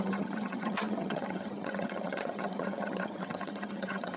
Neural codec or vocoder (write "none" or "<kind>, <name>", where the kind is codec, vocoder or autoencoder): vocoder, HiFi-GAN